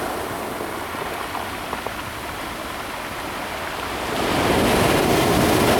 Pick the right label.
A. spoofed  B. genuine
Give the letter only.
B